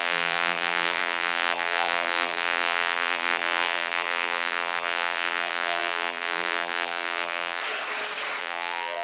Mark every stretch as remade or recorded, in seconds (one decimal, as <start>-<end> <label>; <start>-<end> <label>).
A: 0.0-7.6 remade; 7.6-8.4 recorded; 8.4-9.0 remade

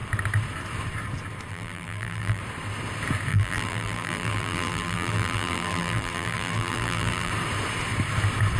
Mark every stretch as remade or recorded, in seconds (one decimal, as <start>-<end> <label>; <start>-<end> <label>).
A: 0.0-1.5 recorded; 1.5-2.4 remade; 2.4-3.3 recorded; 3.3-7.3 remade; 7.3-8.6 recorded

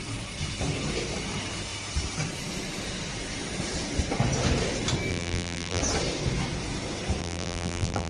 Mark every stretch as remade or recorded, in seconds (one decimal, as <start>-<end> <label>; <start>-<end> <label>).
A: 0.0-5.1 recorded; 5.1-5.8 remade; 5.8-7.2 recorded; 7.2-8.1 remade